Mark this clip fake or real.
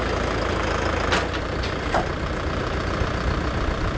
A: real